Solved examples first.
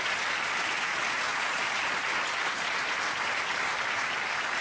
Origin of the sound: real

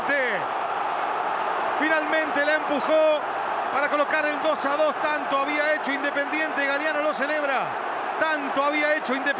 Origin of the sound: real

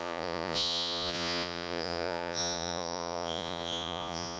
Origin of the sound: fake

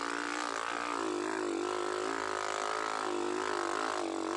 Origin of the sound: real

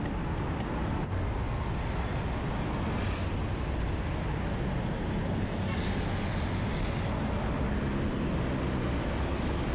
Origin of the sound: real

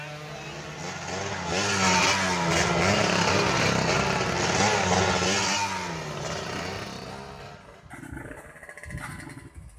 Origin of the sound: real